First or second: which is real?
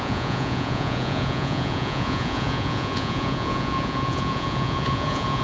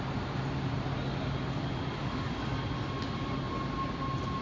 second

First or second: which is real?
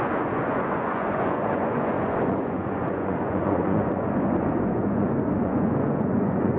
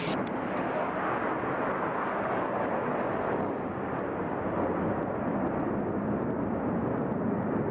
second